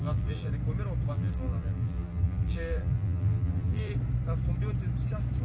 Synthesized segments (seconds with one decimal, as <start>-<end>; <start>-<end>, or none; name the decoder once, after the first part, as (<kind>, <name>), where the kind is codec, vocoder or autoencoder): 0.0-0.5 (vocoder, BigVGAN v2); 1.1-3.9